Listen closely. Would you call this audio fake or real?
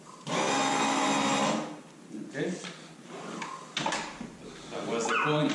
real